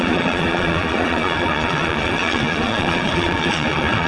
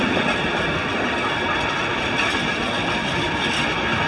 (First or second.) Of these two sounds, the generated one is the first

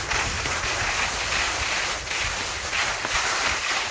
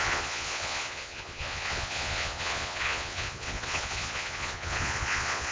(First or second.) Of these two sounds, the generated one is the second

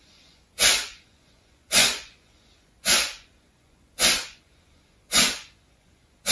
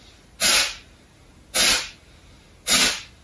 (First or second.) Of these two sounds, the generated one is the first